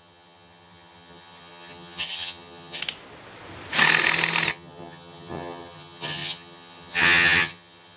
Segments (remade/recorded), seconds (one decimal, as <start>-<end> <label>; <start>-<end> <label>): 0.0-2.8 remade; 2.8-4.5 recorded; 4.5-8.0 remade